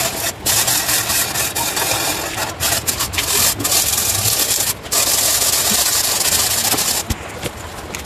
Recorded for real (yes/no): yes